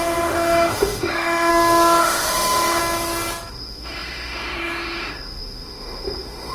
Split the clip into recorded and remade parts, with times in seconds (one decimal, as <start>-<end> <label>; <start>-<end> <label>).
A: 0.0-1.5 remade; 1.5-2.0 recorded; 2.0-2.8 remade; 2.8-3.5 recorded; 3.5-6.5 remade